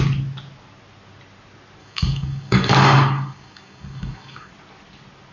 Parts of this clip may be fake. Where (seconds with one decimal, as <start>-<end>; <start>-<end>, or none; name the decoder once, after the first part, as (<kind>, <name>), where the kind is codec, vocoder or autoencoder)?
1.8-4.5 (codec, DAC)